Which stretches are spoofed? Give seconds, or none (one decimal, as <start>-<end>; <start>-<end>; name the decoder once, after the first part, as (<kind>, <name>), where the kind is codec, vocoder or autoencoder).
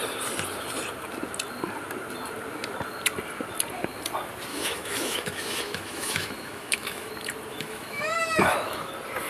4.5-7.1 (autoencoder, DAC-VAE); 7.5-8.9